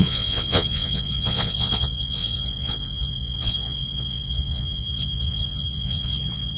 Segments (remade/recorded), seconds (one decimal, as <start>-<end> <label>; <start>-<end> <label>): 0.0-6.6 remade